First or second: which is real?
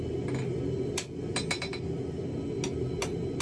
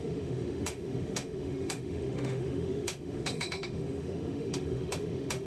first